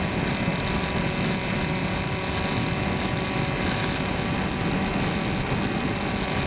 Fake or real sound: real